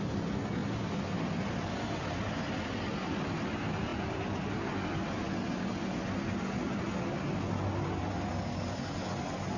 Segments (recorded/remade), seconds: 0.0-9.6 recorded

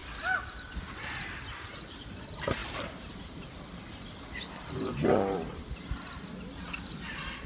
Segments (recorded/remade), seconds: 0.0-1.4 remade; 1.4-7.5 recorded

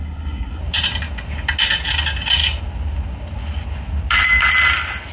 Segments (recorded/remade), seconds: 0.0-0.6 remade; 0.6-5.1 recorded